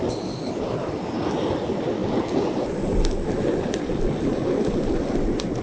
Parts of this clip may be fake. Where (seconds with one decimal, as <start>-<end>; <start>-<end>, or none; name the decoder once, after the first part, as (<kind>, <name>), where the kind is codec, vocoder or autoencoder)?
none